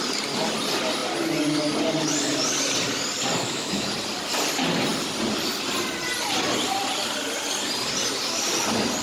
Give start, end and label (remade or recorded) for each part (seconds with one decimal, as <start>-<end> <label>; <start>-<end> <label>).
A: 0.0-3.4 recorded; 3.4-3.9 remade; 3.9-9.0 recorded